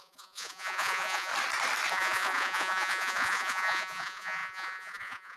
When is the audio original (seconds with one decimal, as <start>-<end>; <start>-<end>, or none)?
1.3-1.9